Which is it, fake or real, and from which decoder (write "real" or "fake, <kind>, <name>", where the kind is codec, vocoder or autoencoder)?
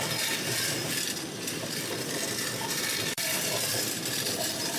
fake, vocoder, BigVGAN v2